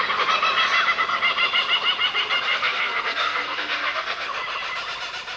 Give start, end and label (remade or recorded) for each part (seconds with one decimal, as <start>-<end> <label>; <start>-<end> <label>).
0.0-2.5 recorded; 2.5-4.3 remade; 4.3-5.4 recorded